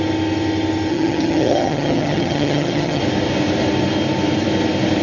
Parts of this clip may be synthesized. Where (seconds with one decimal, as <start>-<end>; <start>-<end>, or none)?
0.9-3.0